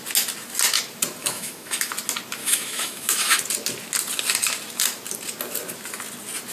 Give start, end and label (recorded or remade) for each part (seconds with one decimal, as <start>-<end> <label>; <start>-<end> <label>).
0.0-1.2 recorded; 1.2-1.9 remade; 1.9-2.4 recorded; 2.4-3.4 remade; 3.4-6.5 recorded